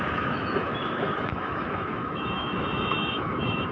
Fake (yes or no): yes